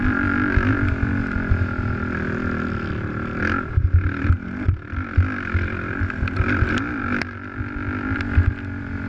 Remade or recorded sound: recorded